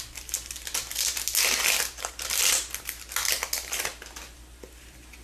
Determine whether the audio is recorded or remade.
recorded